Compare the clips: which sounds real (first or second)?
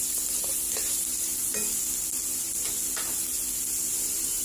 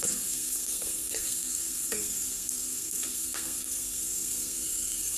first